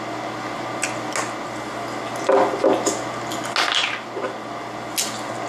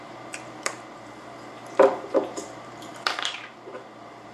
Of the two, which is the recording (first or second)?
first